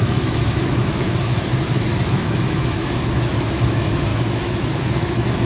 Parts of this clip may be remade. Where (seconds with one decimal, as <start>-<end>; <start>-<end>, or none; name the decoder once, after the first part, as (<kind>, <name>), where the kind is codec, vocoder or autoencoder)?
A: 0.0-5.5 (autoencoder, DAC-VAE)